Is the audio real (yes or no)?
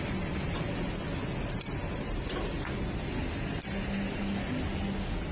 yes